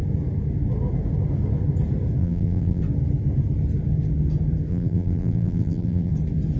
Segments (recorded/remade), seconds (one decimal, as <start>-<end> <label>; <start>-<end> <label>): 0.0-2.2 recorded; 2.2-2.8 remade; 2.8-4.7 recorded; 4.7-6.1 remade; 6.1-6.6 recorded